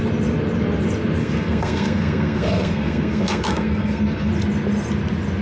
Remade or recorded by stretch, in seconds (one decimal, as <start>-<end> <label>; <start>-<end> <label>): 0.0-1.2 recorded; 1.2-4.3 remade; 4.3-5.4 recorded